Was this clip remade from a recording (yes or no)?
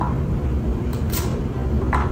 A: no